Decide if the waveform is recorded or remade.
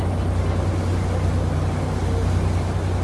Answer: recorded